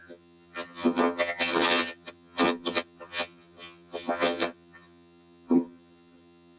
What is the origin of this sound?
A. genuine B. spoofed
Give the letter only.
B